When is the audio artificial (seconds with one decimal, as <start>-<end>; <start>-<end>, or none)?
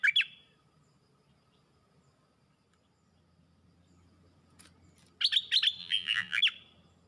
5.8-6.4